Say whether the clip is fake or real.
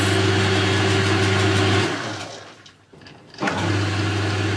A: real